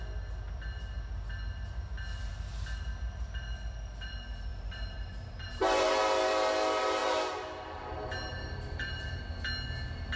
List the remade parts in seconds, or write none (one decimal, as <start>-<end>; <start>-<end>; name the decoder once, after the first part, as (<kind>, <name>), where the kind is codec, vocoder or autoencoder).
4.5-5.9 (vocoder, BigVGAN v2); 7.0-9.2